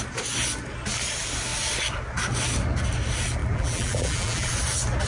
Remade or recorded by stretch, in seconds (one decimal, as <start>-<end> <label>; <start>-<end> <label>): 0.0-3.4 recorded; 3.4-4.5 remade; 4.5-5.1 recorded